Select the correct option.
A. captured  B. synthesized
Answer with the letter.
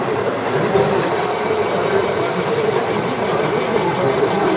B